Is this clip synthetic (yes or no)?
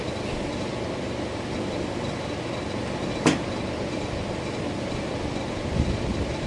no